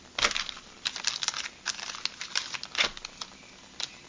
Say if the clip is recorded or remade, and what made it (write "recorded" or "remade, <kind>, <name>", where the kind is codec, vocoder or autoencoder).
recorded